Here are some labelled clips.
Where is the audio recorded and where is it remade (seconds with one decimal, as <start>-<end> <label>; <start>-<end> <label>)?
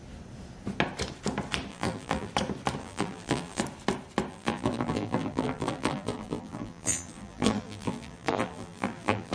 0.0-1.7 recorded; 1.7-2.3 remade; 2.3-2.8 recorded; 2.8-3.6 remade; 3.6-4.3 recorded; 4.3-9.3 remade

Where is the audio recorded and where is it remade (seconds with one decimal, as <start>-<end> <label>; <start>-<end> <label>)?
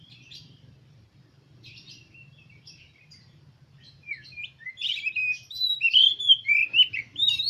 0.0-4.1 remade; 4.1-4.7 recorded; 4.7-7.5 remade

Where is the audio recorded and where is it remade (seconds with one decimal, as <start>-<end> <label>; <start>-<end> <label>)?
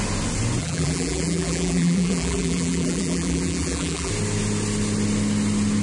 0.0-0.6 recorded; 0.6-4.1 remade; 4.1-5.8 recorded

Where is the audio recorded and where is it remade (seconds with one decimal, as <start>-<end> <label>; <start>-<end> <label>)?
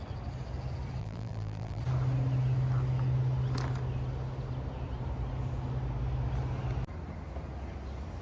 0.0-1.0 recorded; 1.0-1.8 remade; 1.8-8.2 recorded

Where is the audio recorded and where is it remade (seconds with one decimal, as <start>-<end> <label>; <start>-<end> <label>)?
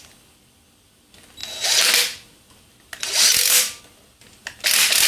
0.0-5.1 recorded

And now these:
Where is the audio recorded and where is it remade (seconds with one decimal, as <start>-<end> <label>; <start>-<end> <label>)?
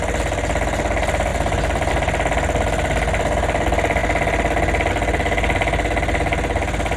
0.0-7.0 recorded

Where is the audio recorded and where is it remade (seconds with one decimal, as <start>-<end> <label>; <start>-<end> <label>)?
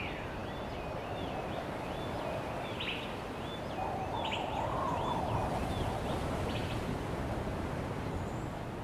0.0-8.8 recorded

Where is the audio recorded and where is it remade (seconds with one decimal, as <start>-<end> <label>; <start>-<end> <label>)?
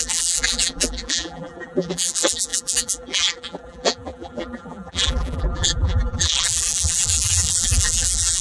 0.0-8.4 remade